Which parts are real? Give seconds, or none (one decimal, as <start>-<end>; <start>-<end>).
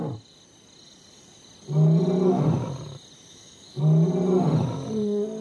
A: 0.0-3.3; 3.8-5.4